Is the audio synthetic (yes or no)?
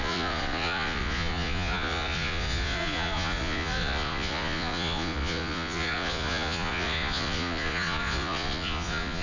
yes